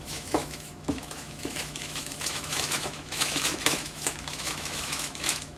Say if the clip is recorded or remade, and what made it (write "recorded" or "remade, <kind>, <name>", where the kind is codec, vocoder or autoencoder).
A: remade, autoencoder, DAC-VAE